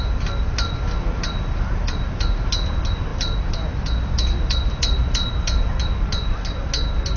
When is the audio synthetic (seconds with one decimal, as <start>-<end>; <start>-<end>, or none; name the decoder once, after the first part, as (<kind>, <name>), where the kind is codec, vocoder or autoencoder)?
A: none